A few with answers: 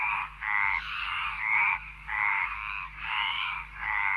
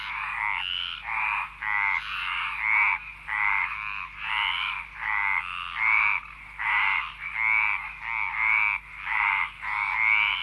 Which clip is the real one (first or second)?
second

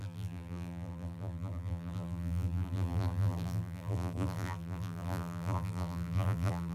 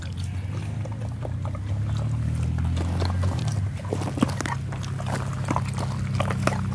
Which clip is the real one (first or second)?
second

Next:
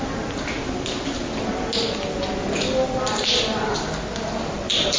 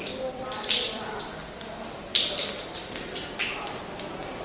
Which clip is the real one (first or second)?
first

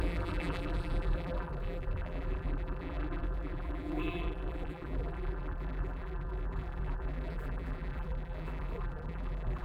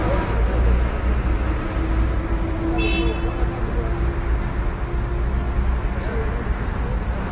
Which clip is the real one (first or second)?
second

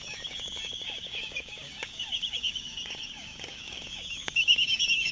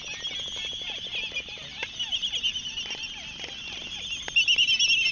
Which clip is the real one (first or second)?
second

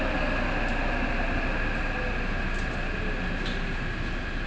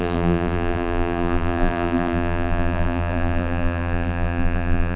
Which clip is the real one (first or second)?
first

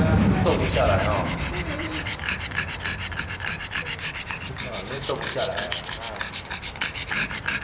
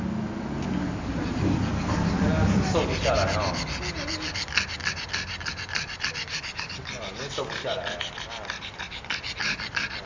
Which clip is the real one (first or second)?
second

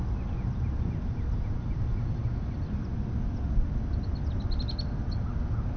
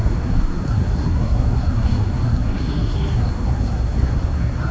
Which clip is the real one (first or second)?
first